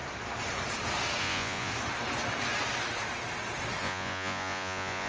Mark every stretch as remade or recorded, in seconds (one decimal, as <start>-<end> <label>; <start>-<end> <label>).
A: 0.0-1.2 recorded; 1.2-1.7 remade; 1.7-3.8 recorded; 3.8-5.1 remade